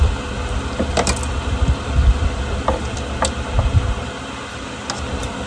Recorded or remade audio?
recorded